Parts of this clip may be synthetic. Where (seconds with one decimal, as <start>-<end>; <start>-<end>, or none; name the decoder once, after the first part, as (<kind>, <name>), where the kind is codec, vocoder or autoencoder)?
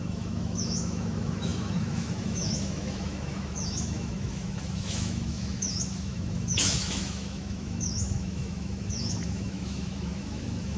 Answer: 0.0-10.8 (autoencoder, DAC-VAE)